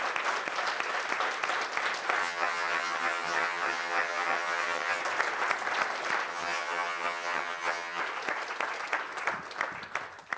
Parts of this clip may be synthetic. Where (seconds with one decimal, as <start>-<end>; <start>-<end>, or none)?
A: 2.2-5.0; 6.3-8.0